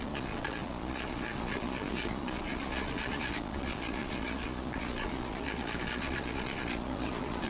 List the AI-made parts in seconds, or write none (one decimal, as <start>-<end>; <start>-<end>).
0.0-7.5